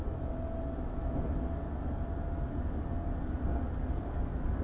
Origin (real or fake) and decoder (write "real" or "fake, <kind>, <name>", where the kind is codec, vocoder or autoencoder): real